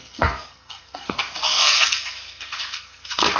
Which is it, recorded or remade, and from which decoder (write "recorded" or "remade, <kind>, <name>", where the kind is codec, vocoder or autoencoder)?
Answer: remade, codec, SNAC